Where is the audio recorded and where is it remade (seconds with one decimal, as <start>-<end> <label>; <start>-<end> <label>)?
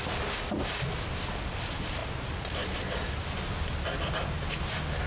0.0-5.1 recorded